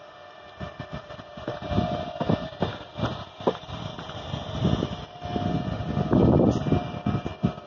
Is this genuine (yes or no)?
yes